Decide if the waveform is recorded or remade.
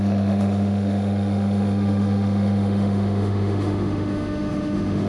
remade